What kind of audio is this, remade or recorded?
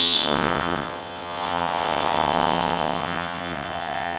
remade